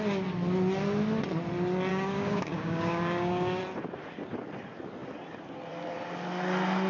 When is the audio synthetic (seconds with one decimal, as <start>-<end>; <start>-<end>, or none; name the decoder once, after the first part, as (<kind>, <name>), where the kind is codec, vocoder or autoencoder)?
1.9-3.6 (codec, DAC)